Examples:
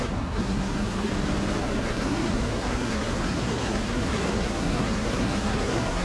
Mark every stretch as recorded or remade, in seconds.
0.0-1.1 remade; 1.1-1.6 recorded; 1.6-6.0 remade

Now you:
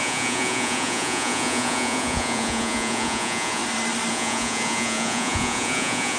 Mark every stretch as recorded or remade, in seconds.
0.0-3.6 remade; 3.6-4.1 recorded; 4.1-6.2 remade

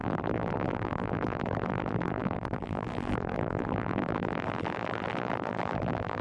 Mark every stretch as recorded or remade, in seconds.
0.0-6.2 remade

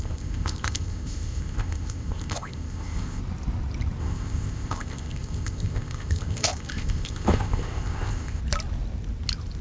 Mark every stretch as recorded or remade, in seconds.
0.0-3.2 remade; 3.2-4.0 recorded; 4.0-8.4 remade; 8.4-9.6 recorded